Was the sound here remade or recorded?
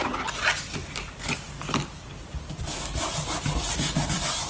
recorded